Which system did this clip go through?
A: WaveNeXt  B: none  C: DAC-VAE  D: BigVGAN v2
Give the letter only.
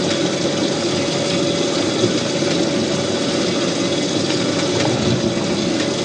B